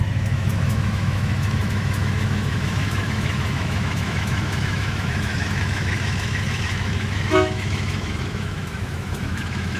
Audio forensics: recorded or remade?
remade